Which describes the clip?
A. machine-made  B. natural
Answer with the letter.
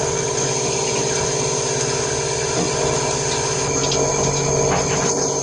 B